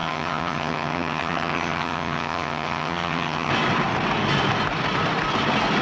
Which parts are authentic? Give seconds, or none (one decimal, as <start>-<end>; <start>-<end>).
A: 3.5-5.8